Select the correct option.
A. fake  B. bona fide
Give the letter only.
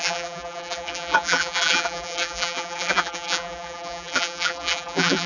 A